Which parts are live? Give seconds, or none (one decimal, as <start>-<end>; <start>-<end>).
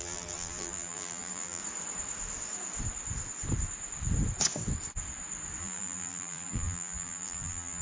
1.6-5.6